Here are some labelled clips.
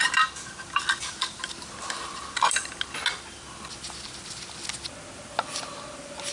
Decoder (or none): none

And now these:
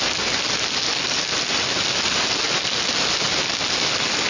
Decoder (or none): none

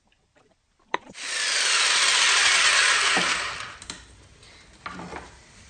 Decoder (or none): none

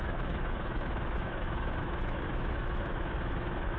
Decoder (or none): autoencoder, DAC-VAE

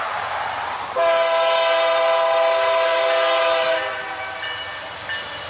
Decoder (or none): none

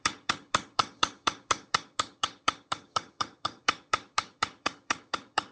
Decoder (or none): vocoder, HiFi-GAN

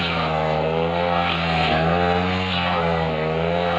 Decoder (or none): codec, SNAC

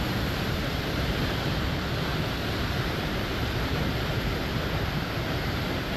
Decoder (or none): vocoder, BigVGAN v2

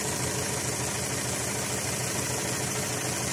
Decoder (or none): none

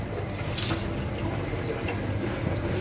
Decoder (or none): none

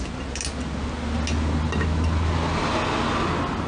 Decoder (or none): none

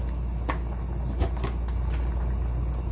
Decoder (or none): none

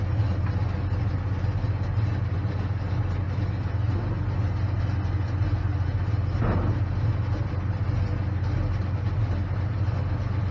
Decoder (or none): none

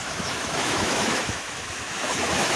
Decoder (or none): autoencoder, DAC-VAE